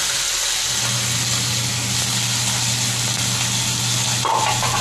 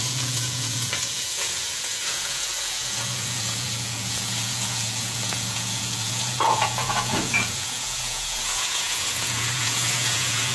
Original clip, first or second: first